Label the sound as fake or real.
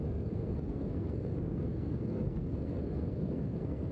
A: fake